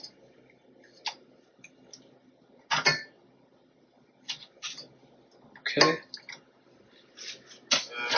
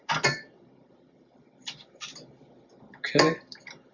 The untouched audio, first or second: first